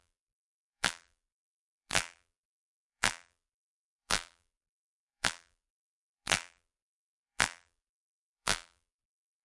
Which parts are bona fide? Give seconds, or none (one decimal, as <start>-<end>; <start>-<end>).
none